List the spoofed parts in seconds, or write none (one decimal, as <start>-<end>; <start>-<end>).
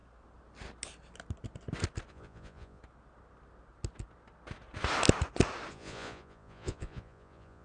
2.1-2.8; 5.7-7.6